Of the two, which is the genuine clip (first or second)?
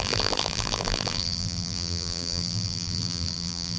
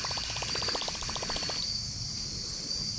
second